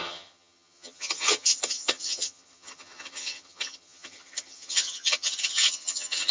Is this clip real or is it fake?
fake